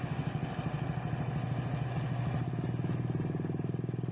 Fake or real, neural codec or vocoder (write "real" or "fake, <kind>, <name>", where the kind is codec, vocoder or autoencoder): real